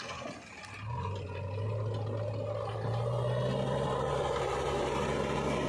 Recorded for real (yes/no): yes